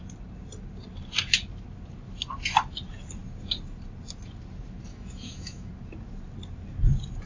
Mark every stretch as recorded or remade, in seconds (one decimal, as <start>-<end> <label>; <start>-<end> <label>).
0.0-4.9 recorded; 4.9-5.7 remade; 5.7-7.3 recorded